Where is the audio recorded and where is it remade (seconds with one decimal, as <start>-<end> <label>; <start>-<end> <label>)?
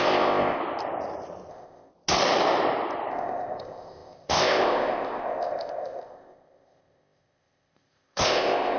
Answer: 0.0-0.6 remade; 0.6-1.5 recorded; 1.5-1.9 remade; 1.9-3.1 recorded; 3.1-8.8 remade